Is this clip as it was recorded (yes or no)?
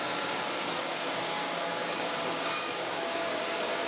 no